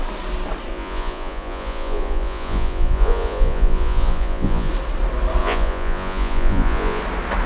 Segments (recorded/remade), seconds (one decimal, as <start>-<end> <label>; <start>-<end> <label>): 0.0-0.7 recorded; 0.7-4.7 remade; 4.7-5.4 recorded; 5.4-7.0 remade; 7.0-7.5 recorded